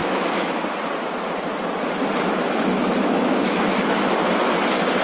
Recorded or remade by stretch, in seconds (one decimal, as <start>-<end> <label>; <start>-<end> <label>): 0.0-0.5 remade; 0.5-2.4 recorded; 2.4-4.1 remade; 4.1-5.0 recorded